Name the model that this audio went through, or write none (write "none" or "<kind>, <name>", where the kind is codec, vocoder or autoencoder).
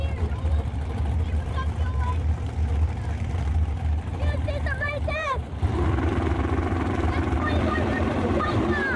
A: vocoder, BigVGAN v2